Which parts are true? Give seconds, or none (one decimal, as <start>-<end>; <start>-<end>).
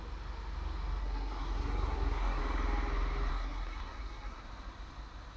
0.0-1.0; 2.4-3.3; 4.4-5.4